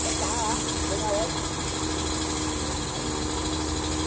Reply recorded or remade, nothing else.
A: recorded